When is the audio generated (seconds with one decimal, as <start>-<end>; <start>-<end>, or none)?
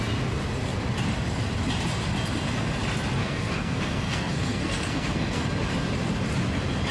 3.2-5.4